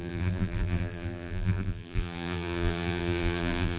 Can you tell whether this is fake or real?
fake